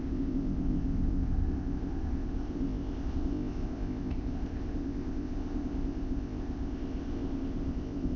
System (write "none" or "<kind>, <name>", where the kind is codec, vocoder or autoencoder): codec, ZipCodec